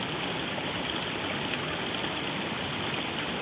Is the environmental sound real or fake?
real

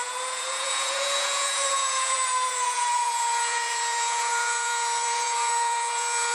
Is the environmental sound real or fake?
fake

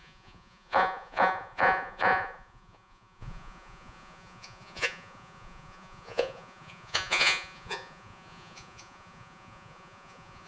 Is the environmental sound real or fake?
fake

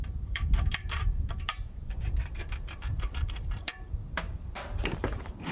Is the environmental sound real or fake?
fake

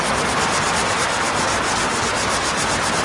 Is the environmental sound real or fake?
real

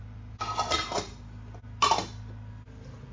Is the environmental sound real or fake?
real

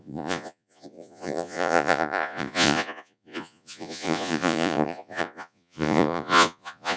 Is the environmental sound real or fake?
fake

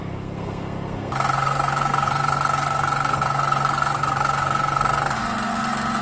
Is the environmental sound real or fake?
fake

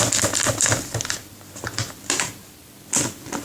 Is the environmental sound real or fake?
fake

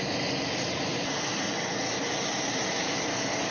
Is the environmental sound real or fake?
real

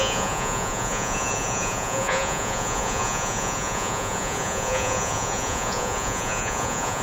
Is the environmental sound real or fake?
fake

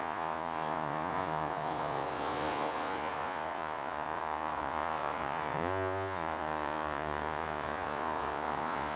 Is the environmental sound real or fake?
fake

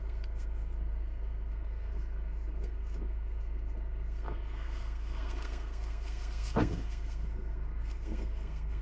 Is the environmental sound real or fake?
fake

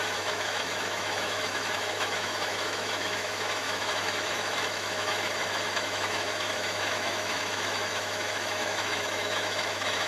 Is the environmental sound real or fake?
fake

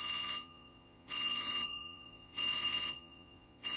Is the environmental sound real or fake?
fake